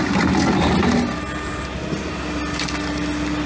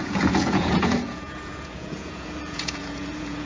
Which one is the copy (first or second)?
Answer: second